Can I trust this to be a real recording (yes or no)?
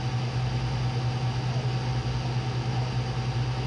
yes